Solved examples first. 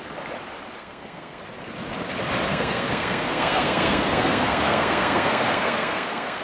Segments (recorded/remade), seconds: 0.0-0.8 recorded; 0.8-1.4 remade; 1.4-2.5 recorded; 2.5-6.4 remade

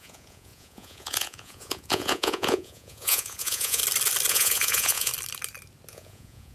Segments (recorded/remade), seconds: 0.0-3.8 remade; 3.8-4.3 recorded; 4.3-5.1 remade; 5.1-5.9 recorded; 5.9-6.5 remade